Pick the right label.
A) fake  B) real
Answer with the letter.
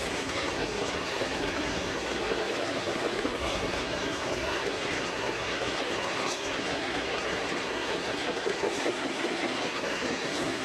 A